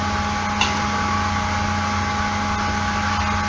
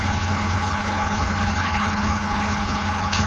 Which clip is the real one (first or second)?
first